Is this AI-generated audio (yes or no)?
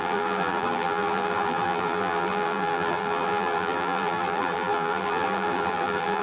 yes